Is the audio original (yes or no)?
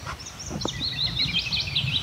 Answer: yes